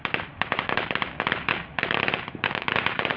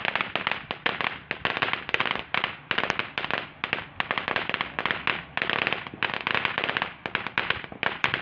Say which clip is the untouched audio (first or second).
second